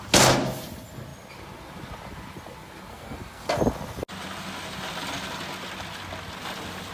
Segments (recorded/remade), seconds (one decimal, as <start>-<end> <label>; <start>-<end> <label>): 0.0-2.9 recorded; 2.9-3.6 remade; 3.6-6.9 recorded